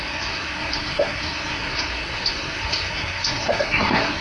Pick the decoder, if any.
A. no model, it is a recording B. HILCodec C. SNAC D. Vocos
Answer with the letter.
C